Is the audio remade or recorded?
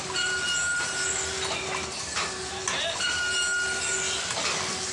recorded